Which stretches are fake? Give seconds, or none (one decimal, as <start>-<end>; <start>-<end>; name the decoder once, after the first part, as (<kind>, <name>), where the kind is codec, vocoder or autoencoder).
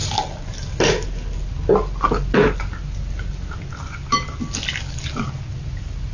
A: none